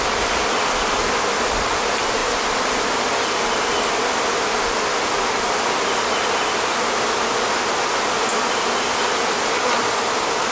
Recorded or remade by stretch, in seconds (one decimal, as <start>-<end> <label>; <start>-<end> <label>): 0.0-10.5 recorded